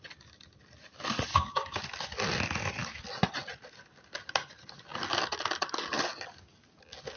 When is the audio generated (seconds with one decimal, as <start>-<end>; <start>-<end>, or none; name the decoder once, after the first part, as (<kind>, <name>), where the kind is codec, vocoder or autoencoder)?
1.3-1.8 (codec, DAC)